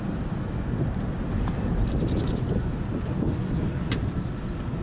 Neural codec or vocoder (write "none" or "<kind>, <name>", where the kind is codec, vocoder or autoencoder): none